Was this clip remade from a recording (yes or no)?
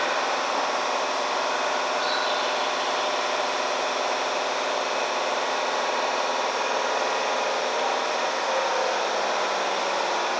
no